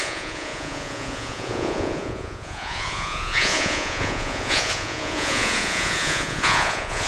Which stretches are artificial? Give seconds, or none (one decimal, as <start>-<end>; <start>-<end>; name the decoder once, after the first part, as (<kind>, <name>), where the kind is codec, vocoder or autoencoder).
0.0-7.1 (vocoder, Vocos)